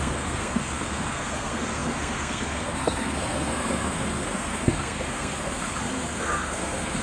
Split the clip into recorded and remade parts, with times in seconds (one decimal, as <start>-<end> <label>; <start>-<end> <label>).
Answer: 0.0-7.0 remade